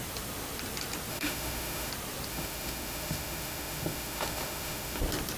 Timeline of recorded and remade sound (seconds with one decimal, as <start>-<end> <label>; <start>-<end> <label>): 0.0-1.1 recorded; 1.1-1.9 remade; 1.9-2.3 recorded; 2.3-5.0 remade; 5.0-5.4 recorded